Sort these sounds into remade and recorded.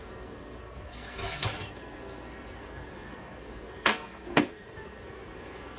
remade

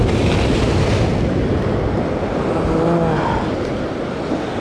recorded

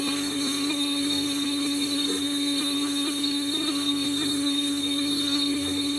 remade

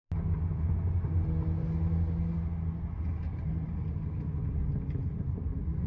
recorded